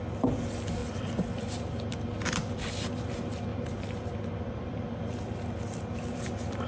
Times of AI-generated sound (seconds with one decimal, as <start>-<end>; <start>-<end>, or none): 0.8-3.0; 3.5-6.2